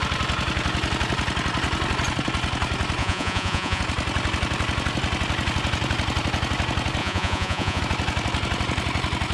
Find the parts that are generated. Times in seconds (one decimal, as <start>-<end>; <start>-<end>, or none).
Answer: 3.0-3.8; 7.0-7.8